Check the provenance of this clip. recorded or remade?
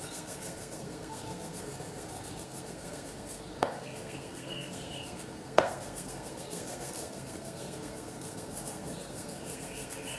remade